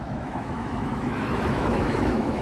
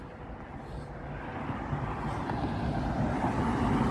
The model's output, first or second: first